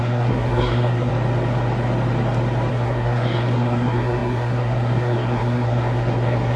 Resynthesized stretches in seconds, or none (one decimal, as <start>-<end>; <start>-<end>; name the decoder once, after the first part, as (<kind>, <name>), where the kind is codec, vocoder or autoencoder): 0.0-1.1 (codec, SNAC); 2.7-6.6